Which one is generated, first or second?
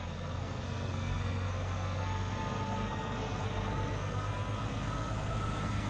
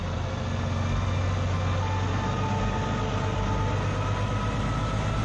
first